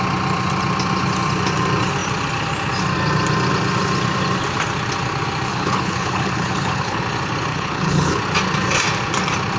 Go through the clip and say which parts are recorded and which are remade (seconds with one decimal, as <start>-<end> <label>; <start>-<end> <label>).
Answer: 0.0-5.5 recorded; 5.5-7.0 remade; 7.0-7.5 recorded; 7.5-8.2 remade; 8.2-9.6 recorded